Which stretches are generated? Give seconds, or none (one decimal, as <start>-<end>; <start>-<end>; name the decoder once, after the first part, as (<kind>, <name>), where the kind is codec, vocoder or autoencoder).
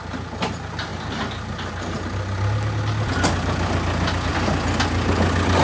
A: none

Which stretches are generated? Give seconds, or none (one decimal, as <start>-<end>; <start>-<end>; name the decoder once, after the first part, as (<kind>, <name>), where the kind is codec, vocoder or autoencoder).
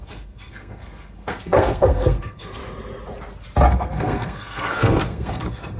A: 0.0-2.6 (codec, SNAC); 3.7-5.8